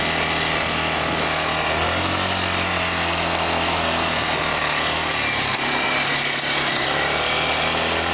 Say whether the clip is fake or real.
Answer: real